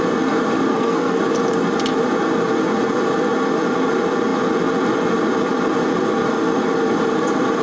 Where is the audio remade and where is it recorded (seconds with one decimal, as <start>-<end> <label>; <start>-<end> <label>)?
0.0-0.7 recorded; 0.7-1.2 remade; 1.2-7.6 recorded